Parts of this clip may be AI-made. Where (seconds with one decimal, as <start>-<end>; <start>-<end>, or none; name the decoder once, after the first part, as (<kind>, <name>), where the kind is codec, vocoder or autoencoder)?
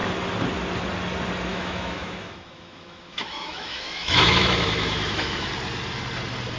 1.5-5.5 (autoencoder, DAC-VAE)